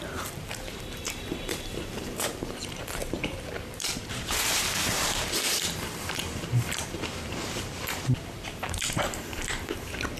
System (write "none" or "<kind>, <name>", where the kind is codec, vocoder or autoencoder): vocoder, BigVGAN v2